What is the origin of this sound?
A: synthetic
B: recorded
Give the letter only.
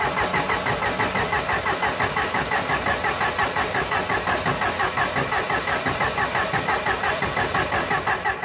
B